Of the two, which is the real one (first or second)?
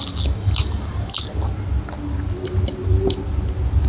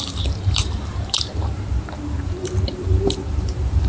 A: first